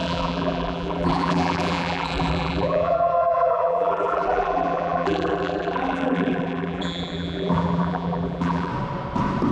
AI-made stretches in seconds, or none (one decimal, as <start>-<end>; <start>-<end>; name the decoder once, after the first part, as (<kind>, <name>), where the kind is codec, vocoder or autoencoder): 0.0-8.7 (vocoder, BigVGAN v2)